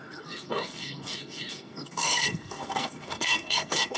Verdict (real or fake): fake